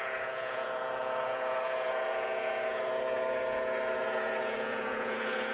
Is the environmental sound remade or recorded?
remade